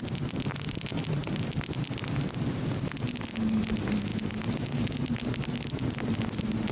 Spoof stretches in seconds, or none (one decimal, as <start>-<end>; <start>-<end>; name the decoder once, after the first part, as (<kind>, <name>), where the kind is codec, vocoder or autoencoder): none